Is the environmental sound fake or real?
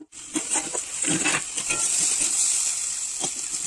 real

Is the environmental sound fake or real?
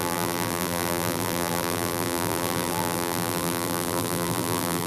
fake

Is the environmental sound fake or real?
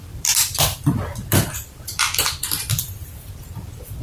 fake